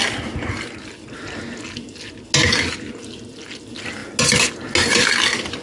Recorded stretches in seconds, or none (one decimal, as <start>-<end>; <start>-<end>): 0.0-5.6